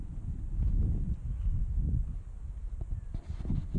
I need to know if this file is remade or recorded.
recorded